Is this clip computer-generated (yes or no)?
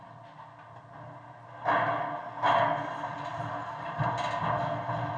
no